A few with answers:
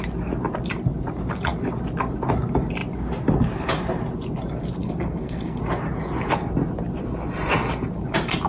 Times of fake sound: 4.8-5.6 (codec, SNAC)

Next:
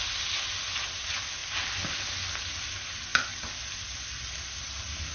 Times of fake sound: none

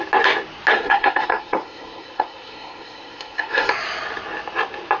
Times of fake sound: 0.7-3.7 (codec, SNAC)

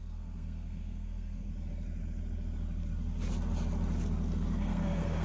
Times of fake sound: 0.0-1.5 (codec, SNAC); 4.6-5.2

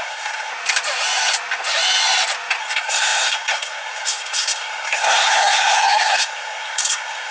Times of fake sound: 0.0-0.5 (codec, SNAC); 2.6-7.3

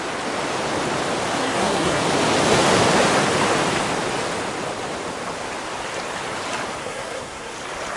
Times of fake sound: 1.4-2.0 (codec, SNAC); 6.8-7.5

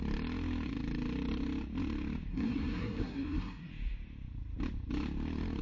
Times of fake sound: 2.3-3.7 (codec, SNAC)

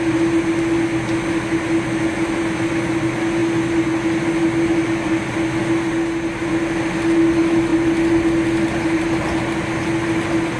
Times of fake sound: none